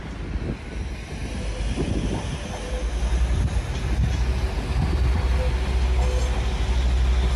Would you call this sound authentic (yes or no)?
yes